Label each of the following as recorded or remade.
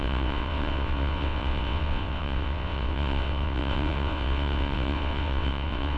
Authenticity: remade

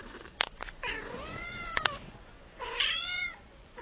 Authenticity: remade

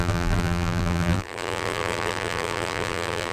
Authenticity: remade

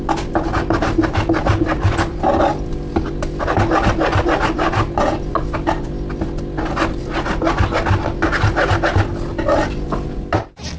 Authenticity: recorded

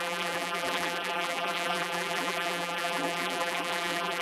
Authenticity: remade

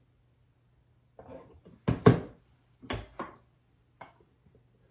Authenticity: recorded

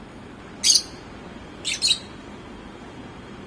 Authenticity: recorded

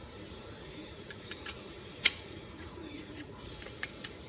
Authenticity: remade